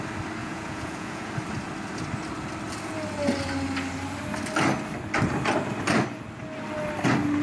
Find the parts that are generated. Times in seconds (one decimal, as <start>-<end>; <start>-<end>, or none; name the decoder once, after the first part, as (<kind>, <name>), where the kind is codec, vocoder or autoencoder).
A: 0.4-1.3 (vocoder, Vocos)